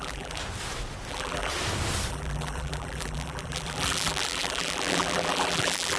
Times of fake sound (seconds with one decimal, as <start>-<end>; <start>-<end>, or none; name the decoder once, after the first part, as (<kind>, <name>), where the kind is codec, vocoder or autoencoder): 0.0-0.4 (vocoder, BigVGAN v2); 1.1-1.5; 2.1-6.0